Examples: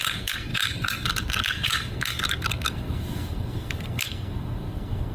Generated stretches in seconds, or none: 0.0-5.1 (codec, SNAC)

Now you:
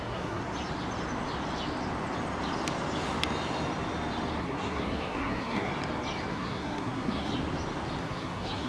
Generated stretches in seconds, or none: 0.0-0.4 (codec, SNAC); 4.4-5.7; 6.3-7.3; 8.0-8.7

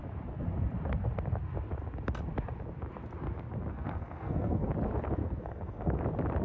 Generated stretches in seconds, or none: 3.7-4.7 (codec, SNAC); 5.2-6.0